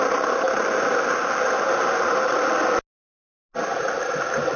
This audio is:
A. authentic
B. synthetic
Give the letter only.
A